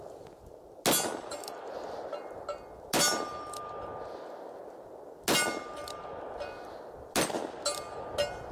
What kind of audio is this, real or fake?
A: real